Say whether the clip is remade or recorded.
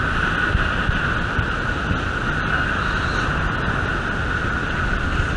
recorded